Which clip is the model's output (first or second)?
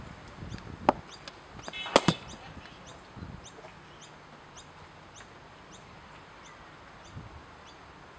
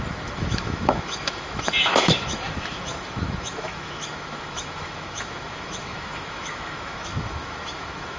second